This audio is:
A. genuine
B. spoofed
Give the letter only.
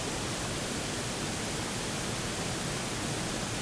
A